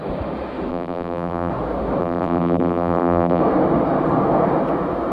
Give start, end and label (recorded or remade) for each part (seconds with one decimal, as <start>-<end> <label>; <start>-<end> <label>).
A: 0.0-0.7 recorded; 0.7-1.5 remade; 1.5-2.0 recorded; 2.0-3.4 remade; 3.4-5.1 recorded